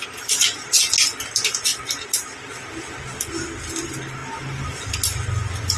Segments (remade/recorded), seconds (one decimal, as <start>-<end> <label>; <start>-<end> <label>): 0.0-5.8 recorded